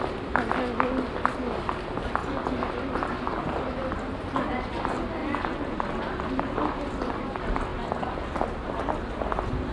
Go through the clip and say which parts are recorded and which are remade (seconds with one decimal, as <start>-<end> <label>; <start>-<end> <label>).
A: 0.0-9.7 recorded